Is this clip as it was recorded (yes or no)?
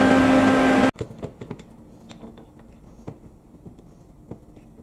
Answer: yes